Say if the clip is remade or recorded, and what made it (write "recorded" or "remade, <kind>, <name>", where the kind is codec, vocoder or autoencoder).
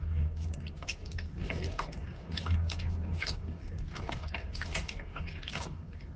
remade, codec, DAC